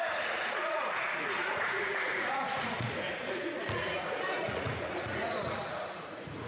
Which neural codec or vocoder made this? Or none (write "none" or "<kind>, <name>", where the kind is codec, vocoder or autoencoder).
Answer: vocoder, Vocos